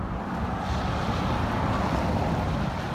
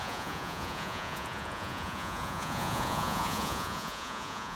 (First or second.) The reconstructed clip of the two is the second